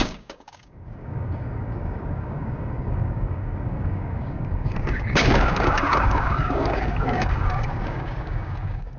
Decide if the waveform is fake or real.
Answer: fake